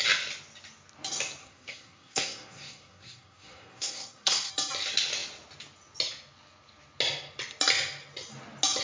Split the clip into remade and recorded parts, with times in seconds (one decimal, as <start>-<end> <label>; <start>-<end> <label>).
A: 0.0-1.4 recorded; 1.4-4.5 remade; 4.5-8.8 recorded